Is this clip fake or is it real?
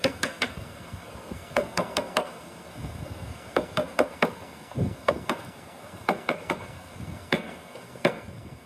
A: fake